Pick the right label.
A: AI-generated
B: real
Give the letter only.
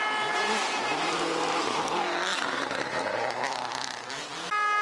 B